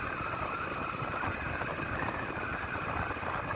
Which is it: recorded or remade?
recorded